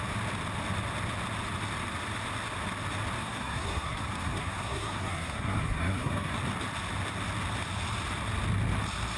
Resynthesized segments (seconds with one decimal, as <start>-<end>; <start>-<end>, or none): 3.2-6.4